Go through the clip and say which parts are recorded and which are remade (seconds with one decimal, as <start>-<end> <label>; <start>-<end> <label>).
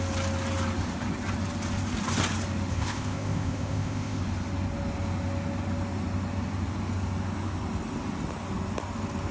0.0-2.7 recorded; 2.7-4.2 remade; 4.2-9.3 recorded